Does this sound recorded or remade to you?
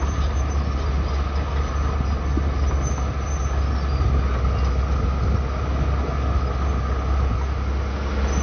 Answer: recorded